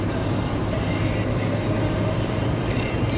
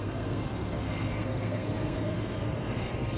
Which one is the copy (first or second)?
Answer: second